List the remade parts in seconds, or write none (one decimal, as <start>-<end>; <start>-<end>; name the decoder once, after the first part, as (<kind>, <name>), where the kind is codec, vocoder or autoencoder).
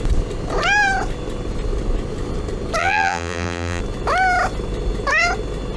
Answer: 2.8-3.8 (vocoder, BigVGAN v2)